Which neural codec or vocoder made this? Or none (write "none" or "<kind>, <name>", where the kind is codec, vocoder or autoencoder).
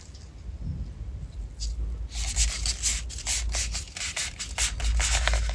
none